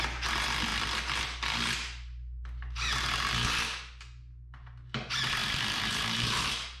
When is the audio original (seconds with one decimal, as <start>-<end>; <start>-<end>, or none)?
0.0-5.4